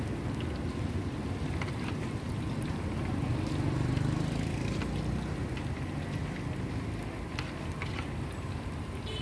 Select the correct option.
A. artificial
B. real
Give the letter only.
B